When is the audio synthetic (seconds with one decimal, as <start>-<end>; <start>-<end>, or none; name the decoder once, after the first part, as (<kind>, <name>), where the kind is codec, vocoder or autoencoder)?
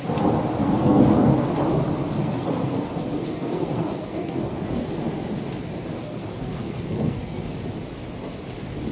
0.6-1.5 (codec, SNAC); 2.2-4.8; 6.0-7.6